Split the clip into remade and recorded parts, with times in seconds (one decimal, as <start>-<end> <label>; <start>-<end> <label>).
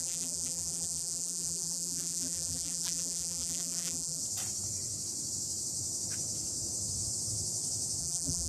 0.0-4.2 remade; 4.2-8.0 recorded; 8.0-8.5 remade